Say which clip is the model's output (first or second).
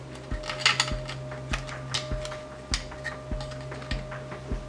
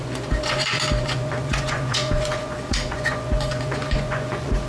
second